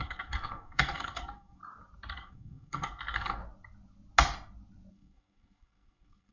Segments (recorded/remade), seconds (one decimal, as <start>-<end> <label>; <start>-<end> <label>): 0.0-1.6 remade; 1.6-2.1 recorded; 2.1-3.4 remade; 3.4-4.9 recorded; 4.9-6.3 remade